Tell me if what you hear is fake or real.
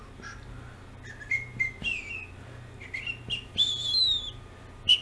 real